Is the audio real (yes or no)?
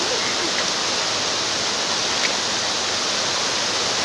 yes